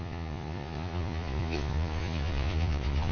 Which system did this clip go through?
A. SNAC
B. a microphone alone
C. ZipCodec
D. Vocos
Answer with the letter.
D